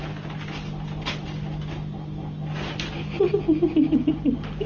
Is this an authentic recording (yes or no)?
yes